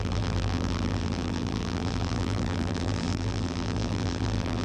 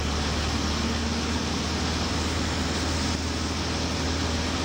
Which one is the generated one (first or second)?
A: first